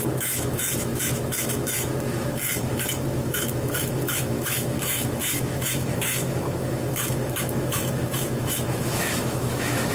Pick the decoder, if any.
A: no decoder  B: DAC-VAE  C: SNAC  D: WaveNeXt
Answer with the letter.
B